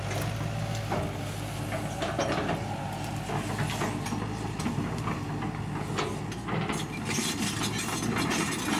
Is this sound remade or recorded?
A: recorded